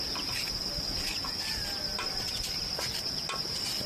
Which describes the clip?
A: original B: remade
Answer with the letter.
A